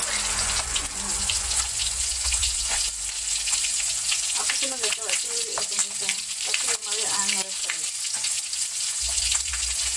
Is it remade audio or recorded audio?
remade